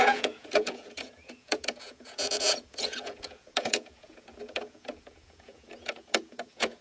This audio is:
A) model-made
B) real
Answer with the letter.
A